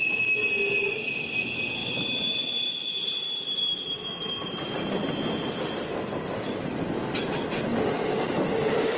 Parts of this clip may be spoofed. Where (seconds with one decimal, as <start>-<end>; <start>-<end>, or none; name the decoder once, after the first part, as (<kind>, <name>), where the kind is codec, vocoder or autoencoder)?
1.8-6.7 (vocoder, BigVGAN v2); 7.7-9.0